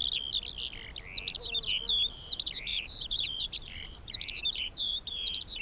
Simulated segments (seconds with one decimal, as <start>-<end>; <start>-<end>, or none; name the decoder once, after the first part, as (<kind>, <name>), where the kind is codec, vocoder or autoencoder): 2.1-5.6 (vocoder, BigVGAN v2)